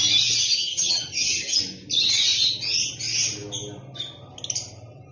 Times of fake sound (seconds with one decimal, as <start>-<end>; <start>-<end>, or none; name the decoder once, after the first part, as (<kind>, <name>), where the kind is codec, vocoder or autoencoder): 0.4-1.6 (vocoder, HiFi-GAN)